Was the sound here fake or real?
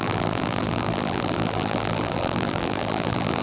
fake